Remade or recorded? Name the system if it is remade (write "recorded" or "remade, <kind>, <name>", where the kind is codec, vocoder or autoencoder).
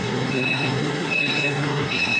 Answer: remade, codec, SNAC